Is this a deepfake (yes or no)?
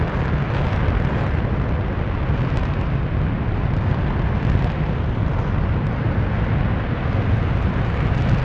no